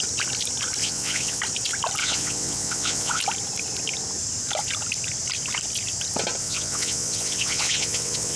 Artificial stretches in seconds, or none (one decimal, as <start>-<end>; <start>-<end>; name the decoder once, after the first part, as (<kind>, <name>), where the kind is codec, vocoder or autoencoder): 0.8-1.4 (vocoder, WaveNeXt); 2.0-3.2; 6.4-8.4